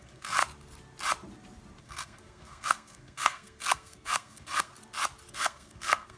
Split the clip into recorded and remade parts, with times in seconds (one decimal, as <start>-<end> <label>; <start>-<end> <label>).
0.0-0.4 remade; 0.4-1.8 recorded; 1.8-4.7 remade; 4.7-5.3 recorded; 5.3-6.2 remade